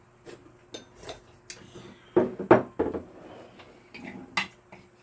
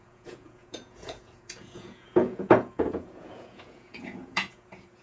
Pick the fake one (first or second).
second